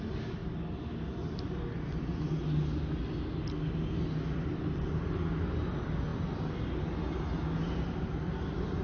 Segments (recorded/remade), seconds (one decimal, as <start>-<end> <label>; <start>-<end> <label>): 0.0-4.4 recorded; 4.4-5.0 remade; 5.0-8.8 recorded

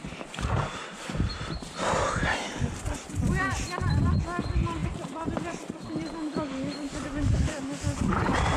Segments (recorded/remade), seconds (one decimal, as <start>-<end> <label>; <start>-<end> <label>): 0.0-2.6 remade; 2.6-4.8 recorded; 4.8-7.6 remade; 7.6-8.6 recorded

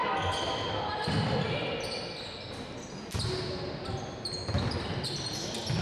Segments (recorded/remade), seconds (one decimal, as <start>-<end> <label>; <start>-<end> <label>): 0.0-5.8 recorded

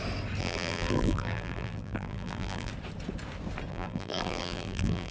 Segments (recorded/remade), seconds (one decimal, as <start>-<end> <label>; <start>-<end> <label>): 0.0-0.4 recorded; 0.4-2.7 remade; 2.7-3.7 recorded; 3.7-5.1 remade

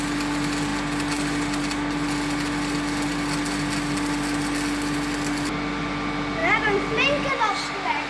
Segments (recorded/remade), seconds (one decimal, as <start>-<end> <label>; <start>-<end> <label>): 0.0-6.4 recorded; 6.4-7.5 remade; 7.5-8.1 recorded

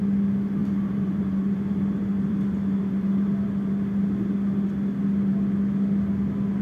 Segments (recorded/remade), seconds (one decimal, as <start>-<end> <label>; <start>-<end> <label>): 0.0-0.6 recorded; 0.6-3.7 remade; 3.7-6.6 recorded

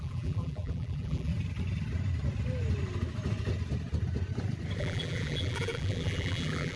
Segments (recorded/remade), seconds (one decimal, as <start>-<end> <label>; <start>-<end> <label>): 0.0-1.3 remade; 1.3-4.8 recorded; 4.8-6.8 remade

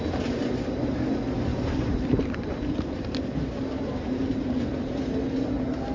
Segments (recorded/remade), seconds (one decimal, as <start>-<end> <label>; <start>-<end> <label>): 0.0-1.5 recorded; 1.5-5.0 remade; 5.0-5.9 recorded